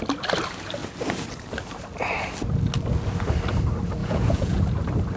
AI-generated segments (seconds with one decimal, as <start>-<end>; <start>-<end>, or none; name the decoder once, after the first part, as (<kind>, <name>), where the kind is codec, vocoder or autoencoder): 4.0-4.6 (vocoder, Vocos)